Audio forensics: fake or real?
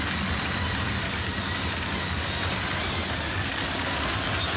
real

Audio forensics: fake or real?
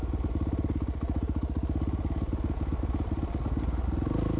real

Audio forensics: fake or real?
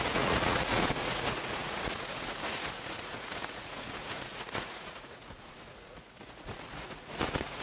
fake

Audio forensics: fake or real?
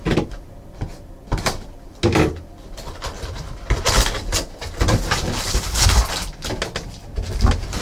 real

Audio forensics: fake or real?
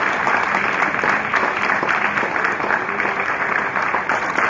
real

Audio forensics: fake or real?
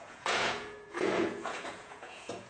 fake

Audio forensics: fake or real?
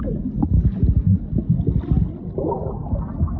real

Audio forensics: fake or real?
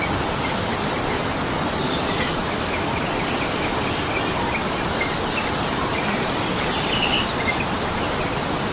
real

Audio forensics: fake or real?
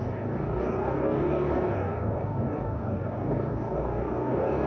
fake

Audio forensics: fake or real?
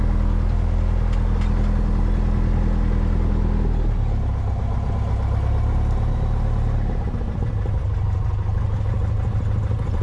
real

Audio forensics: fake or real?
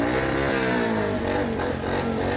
real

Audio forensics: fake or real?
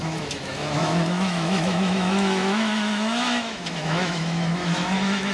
fake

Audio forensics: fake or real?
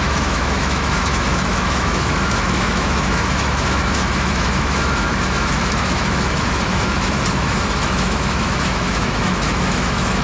fake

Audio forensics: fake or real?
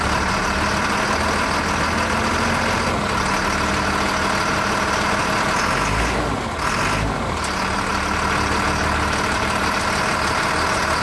real